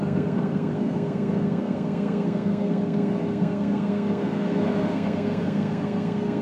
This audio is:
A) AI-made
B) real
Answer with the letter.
A